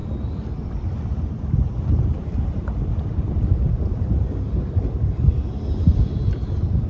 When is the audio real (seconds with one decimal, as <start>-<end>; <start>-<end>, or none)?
0.0-6.9